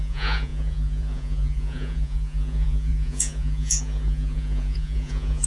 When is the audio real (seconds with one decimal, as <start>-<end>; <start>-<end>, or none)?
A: none